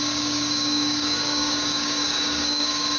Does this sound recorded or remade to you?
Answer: remade